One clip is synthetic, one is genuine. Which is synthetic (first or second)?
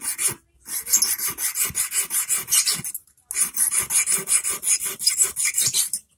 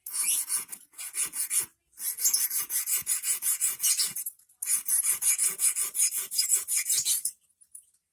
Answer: second